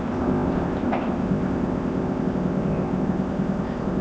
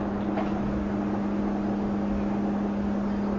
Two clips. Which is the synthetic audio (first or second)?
first